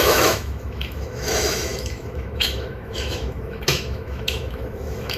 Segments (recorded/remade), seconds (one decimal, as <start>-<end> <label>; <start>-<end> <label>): 0.0-5.2 remade